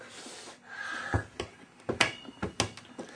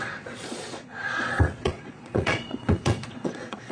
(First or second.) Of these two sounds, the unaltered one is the first